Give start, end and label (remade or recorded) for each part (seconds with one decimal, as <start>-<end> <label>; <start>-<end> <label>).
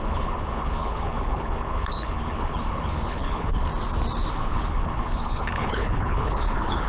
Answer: 0.0-3.7 remade; 3.7-4.3 recorded; 4.3-6.9 remade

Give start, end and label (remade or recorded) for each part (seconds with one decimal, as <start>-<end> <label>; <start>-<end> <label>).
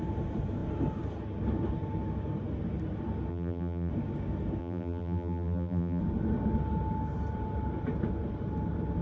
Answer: 0.0-3.3 recorded; 3.3-3.9 remade; 3.9-4.6 recorded; 4.6-6.0 remade; 6.0-9.0 recorded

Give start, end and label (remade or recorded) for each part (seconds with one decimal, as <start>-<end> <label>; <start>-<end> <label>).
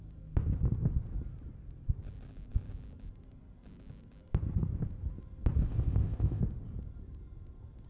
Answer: 0.0-5.7 recorded; 5.7-6.4 remade; 6.4-7.9 recorded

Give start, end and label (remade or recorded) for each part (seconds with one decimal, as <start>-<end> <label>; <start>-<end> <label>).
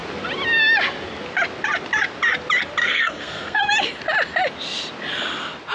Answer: 0.0-2.8 recorded; 2.8-3.6 remade; 3.6-5.7 recorded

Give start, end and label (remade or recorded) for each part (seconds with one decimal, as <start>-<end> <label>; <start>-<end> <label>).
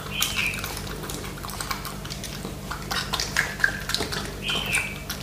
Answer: 0.0-5.2 recorded